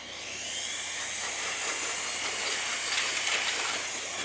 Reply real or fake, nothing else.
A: real